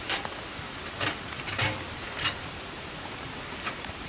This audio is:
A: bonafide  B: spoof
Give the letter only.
B